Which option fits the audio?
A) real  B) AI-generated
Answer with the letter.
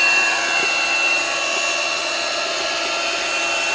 A